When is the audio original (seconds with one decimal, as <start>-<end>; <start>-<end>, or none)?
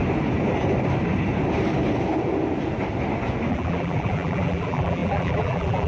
0.0-3.5